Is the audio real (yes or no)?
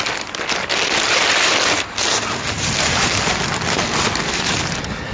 yes